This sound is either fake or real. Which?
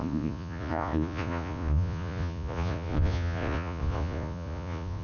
fake